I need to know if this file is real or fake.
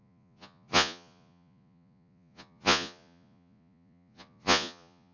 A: fake